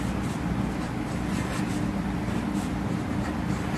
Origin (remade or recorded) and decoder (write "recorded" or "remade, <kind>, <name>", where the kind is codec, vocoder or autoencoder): remade, vocoder, BigVGAN v2